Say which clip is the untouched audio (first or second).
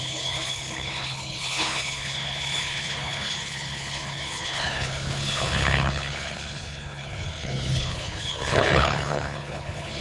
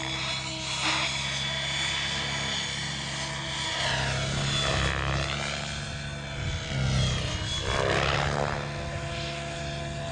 second